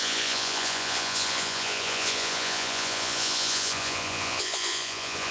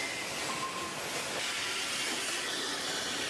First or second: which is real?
second